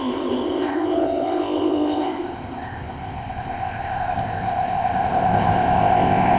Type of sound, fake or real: fake